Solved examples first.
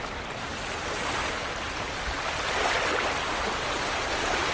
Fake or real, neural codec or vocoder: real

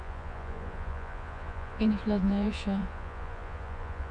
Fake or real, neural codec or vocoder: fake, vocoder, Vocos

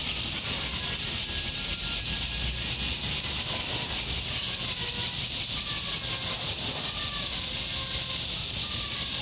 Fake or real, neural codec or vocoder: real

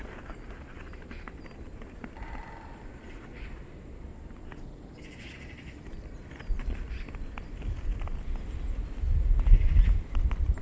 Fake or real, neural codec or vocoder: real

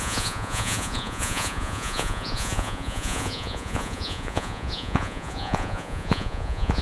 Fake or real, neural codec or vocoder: fake, vocoder, Vocos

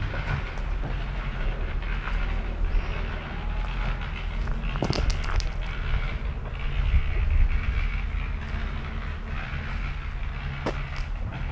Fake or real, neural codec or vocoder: real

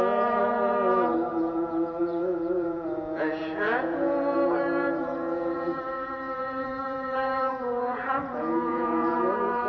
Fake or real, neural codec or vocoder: fake, vocoder, Vocos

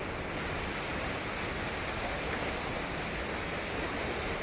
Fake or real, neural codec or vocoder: real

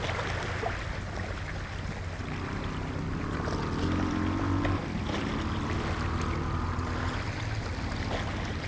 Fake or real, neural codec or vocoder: real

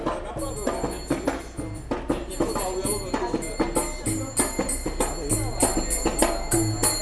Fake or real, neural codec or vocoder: real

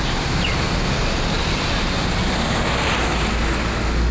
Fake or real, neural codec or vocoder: real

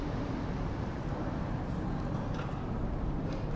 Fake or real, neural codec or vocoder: real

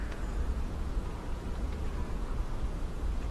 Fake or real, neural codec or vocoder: fake, vocoder, Vocos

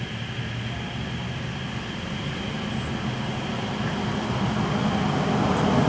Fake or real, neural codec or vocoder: real